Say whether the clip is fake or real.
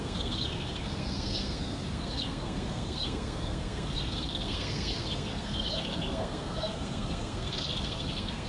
fake